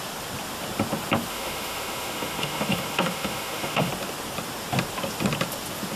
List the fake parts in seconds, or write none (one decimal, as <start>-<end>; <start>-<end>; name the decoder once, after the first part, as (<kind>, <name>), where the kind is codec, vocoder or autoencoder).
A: 1.3-3.9 (autoencoder, DAC-VAE)